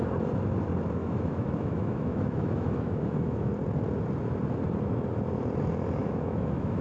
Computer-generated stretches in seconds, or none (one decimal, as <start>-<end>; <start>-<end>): 1.0-3.5; 6.0-6.8